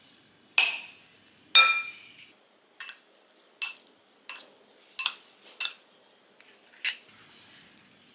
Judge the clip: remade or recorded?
recorded